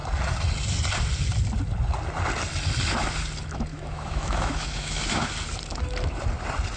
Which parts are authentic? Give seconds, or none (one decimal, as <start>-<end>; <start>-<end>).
0.0-3.7; 5.3-6.8